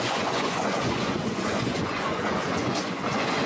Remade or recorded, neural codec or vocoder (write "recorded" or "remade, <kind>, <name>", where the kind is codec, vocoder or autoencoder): remade, vocoder, Vocos